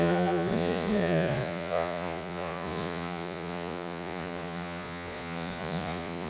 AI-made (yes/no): yes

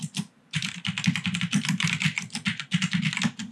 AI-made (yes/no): no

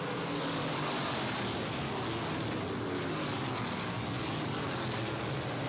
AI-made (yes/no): no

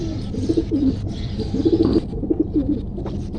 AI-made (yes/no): no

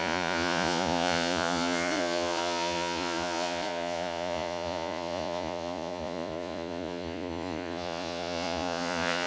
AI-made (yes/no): yes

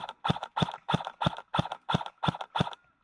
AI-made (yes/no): no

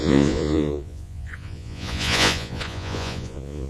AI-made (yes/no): yes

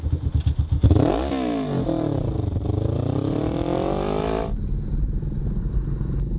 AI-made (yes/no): no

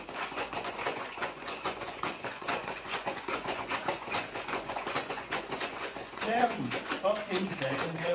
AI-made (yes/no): yes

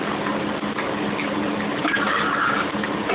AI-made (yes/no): no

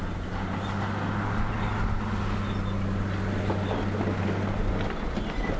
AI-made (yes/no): no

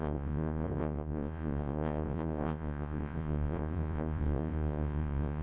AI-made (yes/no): yes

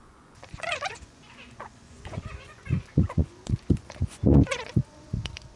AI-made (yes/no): yes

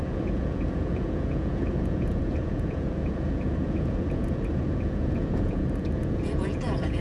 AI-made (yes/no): yes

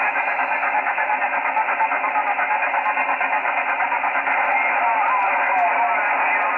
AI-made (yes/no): no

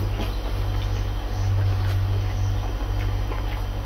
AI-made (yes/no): no